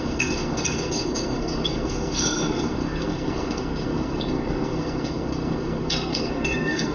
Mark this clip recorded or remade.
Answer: remade